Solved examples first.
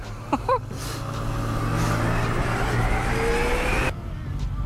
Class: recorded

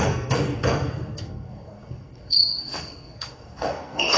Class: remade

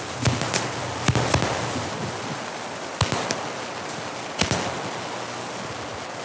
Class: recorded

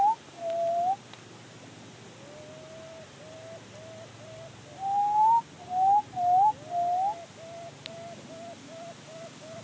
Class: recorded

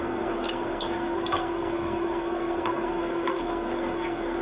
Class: remade